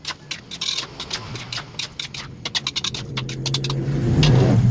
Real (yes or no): yes